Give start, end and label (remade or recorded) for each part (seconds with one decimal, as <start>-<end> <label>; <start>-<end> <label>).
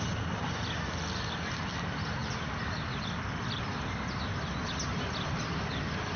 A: 0.0-6.2 recorded